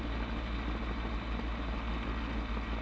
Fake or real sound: real